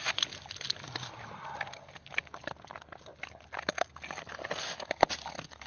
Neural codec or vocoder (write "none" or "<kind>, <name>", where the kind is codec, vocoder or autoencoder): none